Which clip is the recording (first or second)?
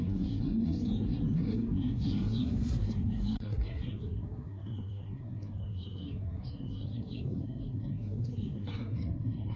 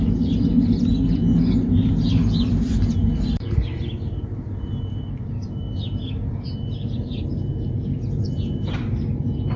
second